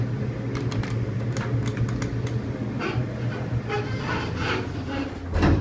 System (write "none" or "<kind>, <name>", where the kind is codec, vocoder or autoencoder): none